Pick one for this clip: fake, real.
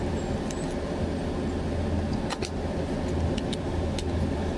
real